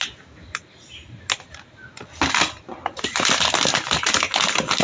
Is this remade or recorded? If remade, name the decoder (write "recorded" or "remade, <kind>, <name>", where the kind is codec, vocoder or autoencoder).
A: recorded